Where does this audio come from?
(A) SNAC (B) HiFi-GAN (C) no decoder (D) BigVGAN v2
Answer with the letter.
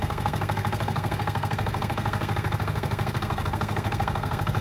A